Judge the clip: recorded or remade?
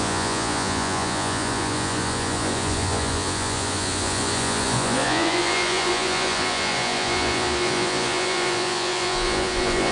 remade